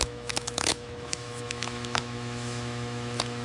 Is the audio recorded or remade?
remade